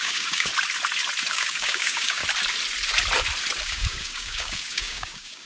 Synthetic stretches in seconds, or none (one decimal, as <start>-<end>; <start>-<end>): 0.0-0.5; 1.3-2.2; 3.6-5.5